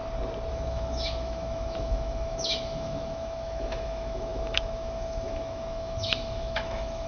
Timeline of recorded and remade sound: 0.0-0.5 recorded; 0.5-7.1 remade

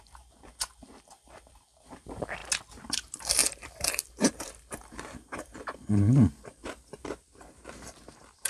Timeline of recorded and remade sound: 0.0-2.4 remade; 2.4-2.9 recorded; 2.9-8.5 remade

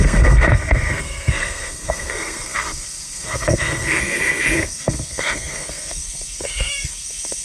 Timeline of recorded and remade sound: 0.0-7.4 remade